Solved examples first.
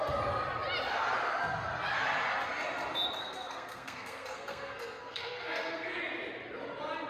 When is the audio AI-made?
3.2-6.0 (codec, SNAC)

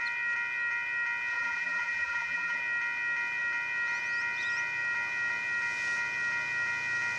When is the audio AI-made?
1.3-2.6 (vocoder, BigVGAN v2)

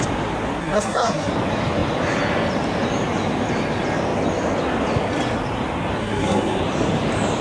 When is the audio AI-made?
0.6-1.3 (codec, SNAC); 6.0-6.6

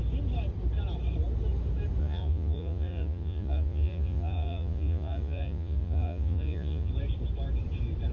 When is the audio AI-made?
2.0-6.9 (vocoder, Vocos)

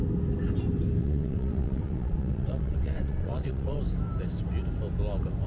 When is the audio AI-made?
1.0-3.8 (vocoder, WaveNeXt)